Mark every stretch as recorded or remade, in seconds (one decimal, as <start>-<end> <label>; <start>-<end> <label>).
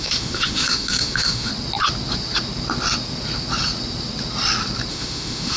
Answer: 0.0-1.5 remade; 1.5-4.9 recorded; 4.9-5.6 remade